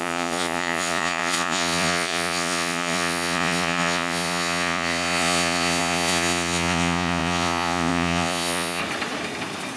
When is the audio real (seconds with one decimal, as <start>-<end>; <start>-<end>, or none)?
8.8-9.8